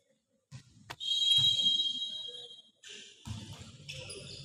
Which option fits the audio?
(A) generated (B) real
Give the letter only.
B